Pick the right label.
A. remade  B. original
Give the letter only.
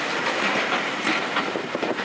A